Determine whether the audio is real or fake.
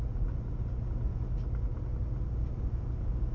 real